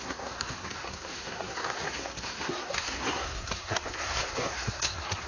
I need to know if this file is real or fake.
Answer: fake